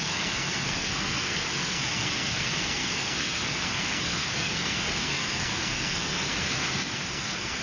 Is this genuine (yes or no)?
no